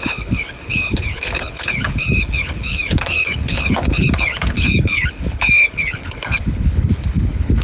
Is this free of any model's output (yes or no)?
no